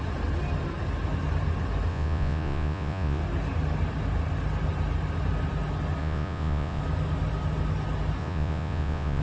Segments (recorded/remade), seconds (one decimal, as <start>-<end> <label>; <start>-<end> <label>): 0.0-1.9 recorded; 1.9-3.2 remade; 3.2-6.0 recorded; 6.0-6.8 remade; 6.8-8.2 recorded; 8.2-9.2 remade

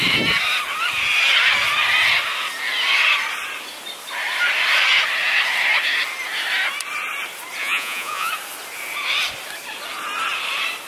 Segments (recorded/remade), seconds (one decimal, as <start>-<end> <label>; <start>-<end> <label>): 0.0-7.6 recorded; 7.6-8.3 remade; 8.3-10.9 recorded

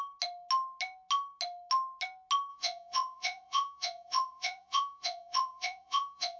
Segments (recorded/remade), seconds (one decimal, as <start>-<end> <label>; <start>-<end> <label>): 0.0-2.5 recorded; 2.5-6.4 remade

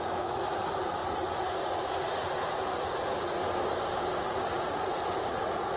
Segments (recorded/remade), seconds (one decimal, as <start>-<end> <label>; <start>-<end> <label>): 0.0-3.4 remade; 3.4-4.2 recorded; 4.2-5.8 remade